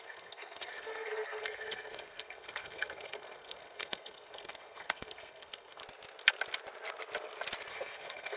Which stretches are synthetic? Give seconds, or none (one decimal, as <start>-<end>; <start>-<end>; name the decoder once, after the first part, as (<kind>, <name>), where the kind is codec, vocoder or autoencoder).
0.0-5.8 (codec, SNAC); 7.7-8.4